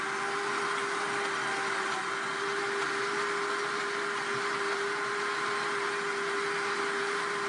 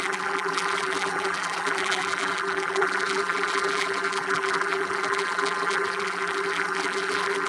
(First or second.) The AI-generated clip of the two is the second